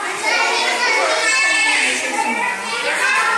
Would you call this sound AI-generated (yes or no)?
no